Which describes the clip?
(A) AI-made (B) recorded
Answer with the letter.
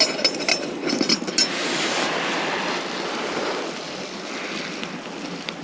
B